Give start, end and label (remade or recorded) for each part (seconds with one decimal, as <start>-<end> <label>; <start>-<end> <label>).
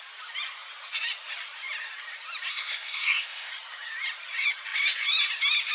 0.0-2.5 recorded; 2.5-3.5 remade; 3.5-5.7 recorded